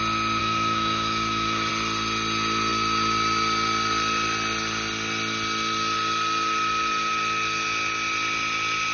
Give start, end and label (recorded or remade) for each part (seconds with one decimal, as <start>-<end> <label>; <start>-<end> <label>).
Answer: 0.0-0.4 recorded; 0.4-1.7 remade; 1.7-8.9 recorded